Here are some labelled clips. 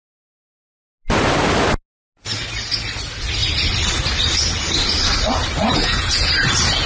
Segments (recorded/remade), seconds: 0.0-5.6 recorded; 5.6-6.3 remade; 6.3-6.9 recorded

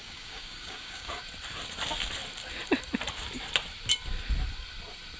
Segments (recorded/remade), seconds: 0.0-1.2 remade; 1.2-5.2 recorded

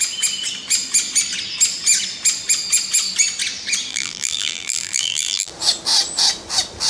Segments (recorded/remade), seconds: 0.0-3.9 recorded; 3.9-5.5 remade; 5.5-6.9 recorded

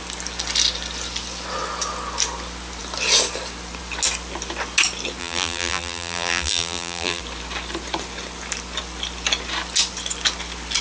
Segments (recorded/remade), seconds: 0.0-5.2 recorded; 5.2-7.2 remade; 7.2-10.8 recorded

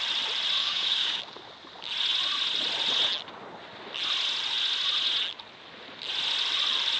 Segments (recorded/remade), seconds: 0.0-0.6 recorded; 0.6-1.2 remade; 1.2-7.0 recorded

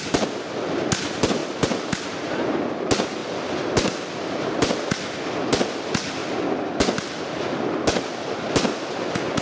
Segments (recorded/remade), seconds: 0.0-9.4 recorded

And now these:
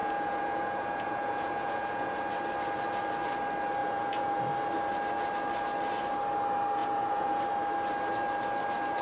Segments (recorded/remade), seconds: 0.0-2.2 remade; 2.2-3.8 recorded; 3.8-4.4 remade; 4.4-6.8 recorded; 6.8-7.4 remade; 7.4-9.0 recorded

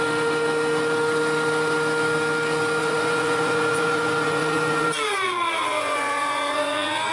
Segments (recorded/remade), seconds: 0.0-2.8 recorded; 2.8-7.1 remade